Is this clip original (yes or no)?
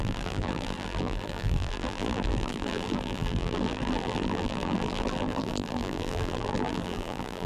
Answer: no